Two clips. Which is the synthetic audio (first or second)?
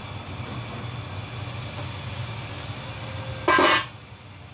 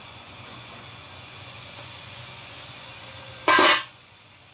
second